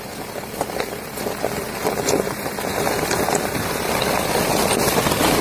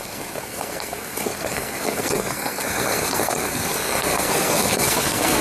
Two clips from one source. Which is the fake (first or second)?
second